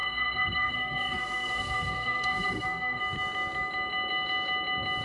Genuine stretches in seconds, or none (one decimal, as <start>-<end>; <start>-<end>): 3.0-5.0